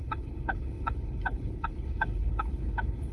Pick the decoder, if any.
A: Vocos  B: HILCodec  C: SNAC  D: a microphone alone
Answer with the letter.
B